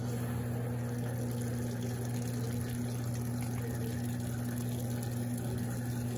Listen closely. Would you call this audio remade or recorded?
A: recorded